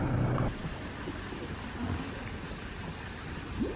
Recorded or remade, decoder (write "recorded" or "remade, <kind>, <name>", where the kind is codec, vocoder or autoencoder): recorded